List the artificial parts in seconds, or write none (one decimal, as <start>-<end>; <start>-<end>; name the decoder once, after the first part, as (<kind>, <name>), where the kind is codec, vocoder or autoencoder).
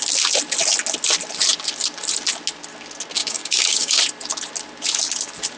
3.2-4.0 (codec, DAC)